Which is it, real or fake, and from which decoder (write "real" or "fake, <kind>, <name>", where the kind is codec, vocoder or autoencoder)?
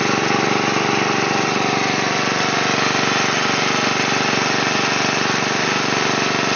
real